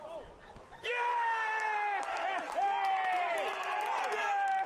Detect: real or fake real